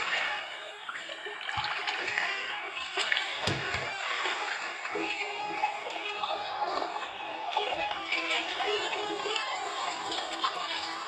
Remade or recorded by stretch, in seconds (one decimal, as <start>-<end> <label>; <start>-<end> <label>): 0.0-1.1 remade; 1.1-2.0 recorded; 2.0-11.1 remade